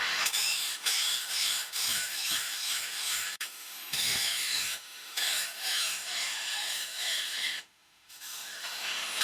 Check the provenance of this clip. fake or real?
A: fake